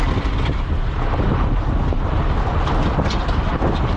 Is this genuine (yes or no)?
yes